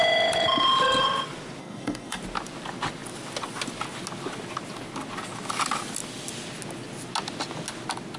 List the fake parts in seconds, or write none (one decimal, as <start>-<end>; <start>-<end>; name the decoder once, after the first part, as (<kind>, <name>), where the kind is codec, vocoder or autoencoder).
1.6-2.2 (codec, SNAC)